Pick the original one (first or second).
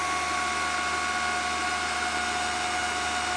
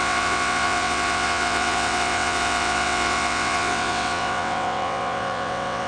first